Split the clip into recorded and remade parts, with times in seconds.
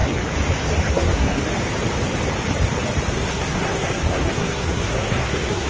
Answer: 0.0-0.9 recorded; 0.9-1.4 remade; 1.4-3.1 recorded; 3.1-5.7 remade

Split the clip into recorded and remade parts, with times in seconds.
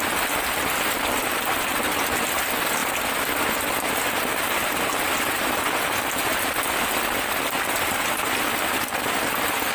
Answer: 0.0-9.7 recorded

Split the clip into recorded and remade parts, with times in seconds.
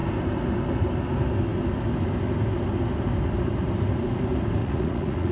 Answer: 0.0-4.6 recorded; 4.6-5.3 remade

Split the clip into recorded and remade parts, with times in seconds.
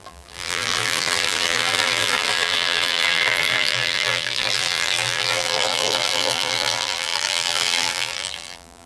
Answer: 0.0-8.9 remade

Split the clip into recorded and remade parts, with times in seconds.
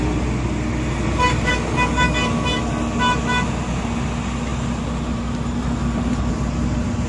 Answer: 0.0-1.5 recorded; 1.5-2.6 remade; 2.6-7.1 recorded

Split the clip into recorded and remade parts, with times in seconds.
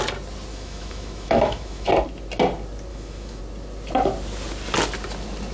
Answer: 0.0-0.5 recorded; 0.5-1.9 remade; 1.9-2.9 recorded; 2.9-3.4 remade; 3.4-5.5 recorded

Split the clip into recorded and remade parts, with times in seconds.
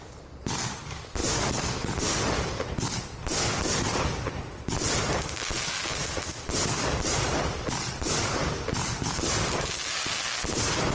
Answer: 0.0-10.9 recorded